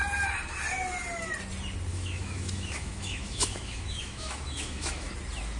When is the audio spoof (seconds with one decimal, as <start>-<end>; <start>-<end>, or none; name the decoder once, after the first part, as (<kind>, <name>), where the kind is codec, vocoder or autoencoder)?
1.9-5.1 (autoencoder, DAC-VAE)